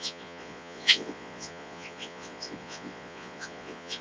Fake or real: fake